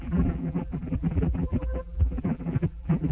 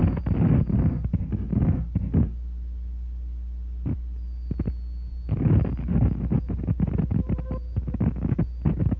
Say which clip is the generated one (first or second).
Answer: first